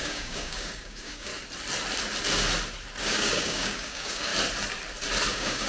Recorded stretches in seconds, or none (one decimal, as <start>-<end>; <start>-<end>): 1.3-3.0; 4.3-5.3